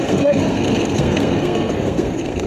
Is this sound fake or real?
fake